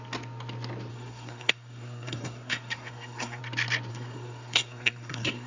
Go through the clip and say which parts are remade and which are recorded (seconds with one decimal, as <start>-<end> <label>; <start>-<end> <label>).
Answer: 0.0-0.9 recorded; 0.9-3.4 remade; 3.4-3.9 recorded; 3.9-5.5 remade